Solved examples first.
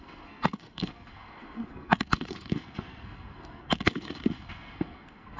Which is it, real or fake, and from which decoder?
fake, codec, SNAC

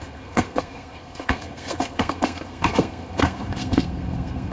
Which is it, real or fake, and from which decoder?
fake, codec, SNAC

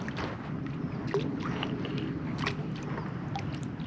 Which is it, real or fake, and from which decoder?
real